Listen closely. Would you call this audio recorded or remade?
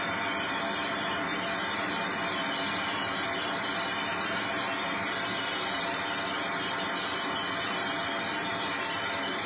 recorded